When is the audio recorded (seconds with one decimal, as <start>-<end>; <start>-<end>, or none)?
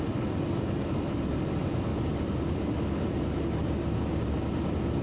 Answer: 0.0-5.0